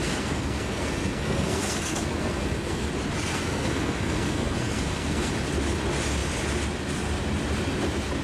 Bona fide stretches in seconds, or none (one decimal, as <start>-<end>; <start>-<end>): 2.9-3.3; 5.3-8.2